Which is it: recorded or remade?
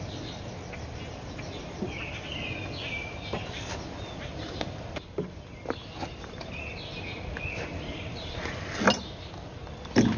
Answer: recorded